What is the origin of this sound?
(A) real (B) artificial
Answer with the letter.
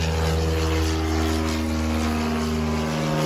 A